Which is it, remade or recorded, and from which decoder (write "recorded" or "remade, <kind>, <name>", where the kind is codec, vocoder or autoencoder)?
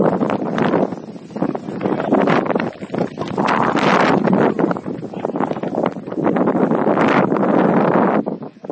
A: recorded